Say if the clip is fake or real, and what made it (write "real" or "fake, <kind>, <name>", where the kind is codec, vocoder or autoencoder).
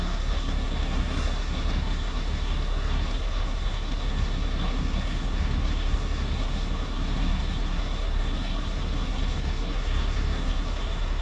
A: fake, codec, SNAC